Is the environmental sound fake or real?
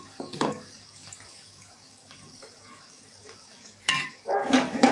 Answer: fake